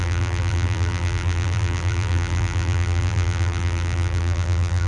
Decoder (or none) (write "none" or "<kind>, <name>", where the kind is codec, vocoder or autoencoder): vocoder, BigVGAN v2